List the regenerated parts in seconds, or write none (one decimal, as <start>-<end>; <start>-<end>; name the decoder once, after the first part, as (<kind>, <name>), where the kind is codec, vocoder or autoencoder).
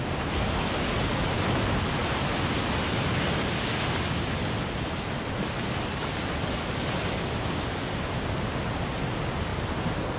none